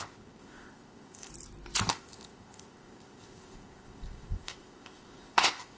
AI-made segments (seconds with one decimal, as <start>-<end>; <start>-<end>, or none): 0.0-1.3; 1.9-5.8